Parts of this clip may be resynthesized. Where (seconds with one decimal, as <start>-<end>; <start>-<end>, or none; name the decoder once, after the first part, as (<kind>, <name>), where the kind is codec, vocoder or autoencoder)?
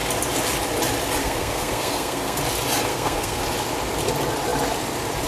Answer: 1.2-2.4 (codec, SNAC); 2.9-3.4